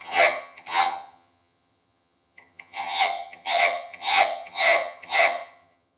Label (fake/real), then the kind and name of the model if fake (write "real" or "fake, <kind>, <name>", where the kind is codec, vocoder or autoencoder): fake, vocoder, HiFi-GAN